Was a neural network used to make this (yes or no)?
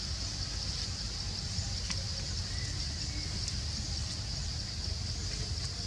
no